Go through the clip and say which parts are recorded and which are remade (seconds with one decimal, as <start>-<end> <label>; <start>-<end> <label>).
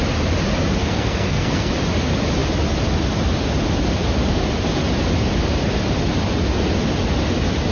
0.0-0.8 recorded; 0.8-1.7 remade; 1.7-7.7 recorded